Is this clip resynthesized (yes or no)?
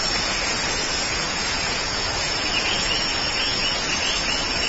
yes